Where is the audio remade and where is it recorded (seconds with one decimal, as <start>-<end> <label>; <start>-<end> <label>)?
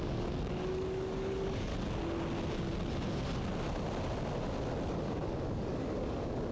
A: 0.0-1.7 remade; 1.7-4.9 recorded; 4.9-6.5 remade